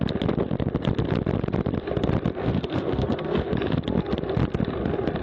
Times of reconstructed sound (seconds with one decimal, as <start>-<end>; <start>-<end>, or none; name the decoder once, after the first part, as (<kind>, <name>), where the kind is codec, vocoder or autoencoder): 2.4-3.5 (codec, SNAC)